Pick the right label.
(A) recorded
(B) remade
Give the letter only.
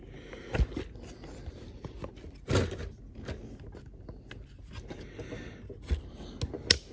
A